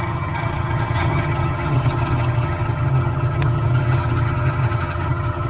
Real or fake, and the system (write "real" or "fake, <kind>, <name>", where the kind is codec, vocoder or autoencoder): fake, vocoder, HiFi-GAN